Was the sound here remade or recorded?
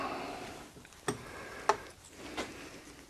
recorded